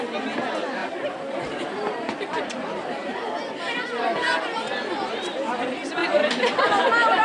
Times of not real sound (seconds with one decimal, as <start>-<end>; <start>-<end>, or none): 0.8-5.1; 6.0-6.6